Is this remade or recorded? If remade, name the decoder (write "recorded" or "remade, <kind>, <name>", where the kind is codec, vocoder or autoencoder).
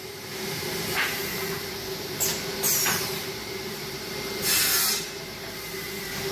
remade, vocoder, BigVGAN v2